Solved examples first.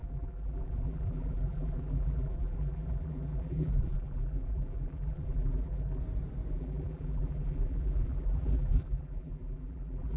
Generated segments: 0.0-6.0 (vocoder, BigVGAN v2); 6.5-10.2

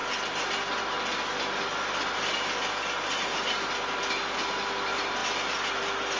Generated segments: none

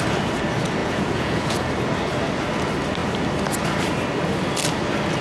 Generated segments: 0.8-1.7 (vocoder, Vocos)